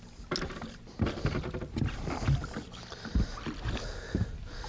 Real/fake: real